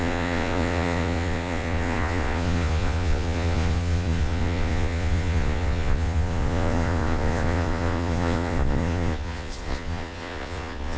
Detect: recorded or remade remade